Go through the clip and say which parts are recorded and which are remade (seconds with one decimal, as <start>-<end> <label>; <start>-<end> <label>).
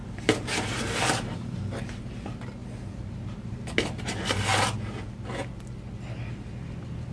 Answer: 0.0-2.0 remade; 2.0-2.6 recorded; 2.6-3.2 remade; 3.2-7.1 recorded